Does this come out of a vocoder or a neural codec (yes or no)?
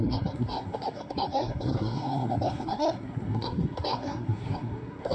yes